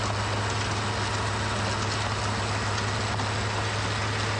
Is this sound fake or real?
real